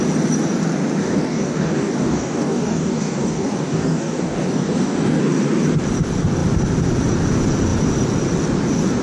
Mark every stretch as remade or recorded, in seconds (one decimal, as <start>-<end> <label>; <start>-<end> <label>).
0.0-1.0 recorded; 1.0-5.2 remade; 5.2-9.0 recorded